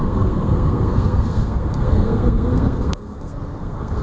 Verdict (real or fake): fake